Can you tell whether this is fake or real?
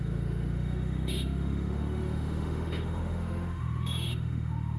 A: fake